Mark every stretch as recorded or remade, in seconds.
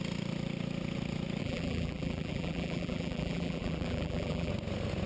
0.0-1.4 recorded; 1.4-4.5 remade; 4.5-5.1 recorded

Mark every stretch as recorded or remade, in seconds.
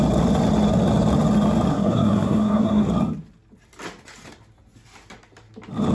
0.0-1.7 recorded; 1.7-2.9 remade; 2.9-5.9 recorded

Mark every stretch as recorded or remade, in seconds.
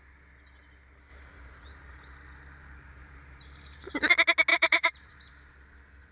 0.0-1.1 recorded; 1.1-4.1 remade; 4.1-4.5 recorded; 4.5-5.3 remade; 5.3-6.1 recorded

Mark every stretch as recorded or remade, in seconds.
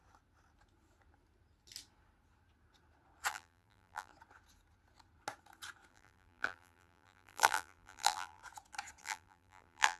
0.0-3.3 recorded; 3.3-4.1 remade; 4.1-5.9 recorded; 5.9-8.4 remade; 8.4-9.0 recorded; 9.0-10.0 remade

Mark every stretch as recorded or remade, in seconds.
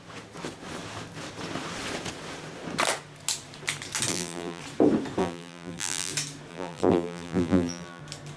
0.0-4.1 recorded; 4.1-4.6 remade; 4.6-5.2 recorded; 5.2-6.1 remade; 6.1-6.5 recorded; 6.5-8.0 remade; 8.0-8.4 recorded